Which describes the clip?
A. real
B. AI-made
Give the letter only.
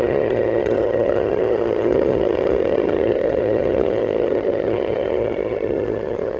B